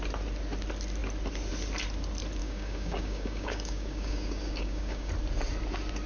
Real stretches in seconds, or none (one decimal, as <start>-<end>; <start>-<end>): 0.0-2.4; 5.1-6.1